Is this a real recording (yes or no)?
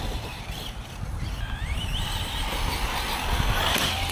yes